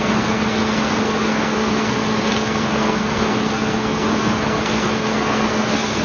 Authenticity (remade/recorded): remade